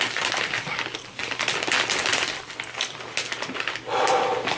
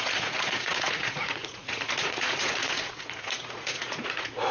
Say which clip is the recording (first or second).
first